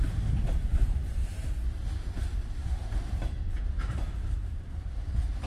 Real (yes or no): no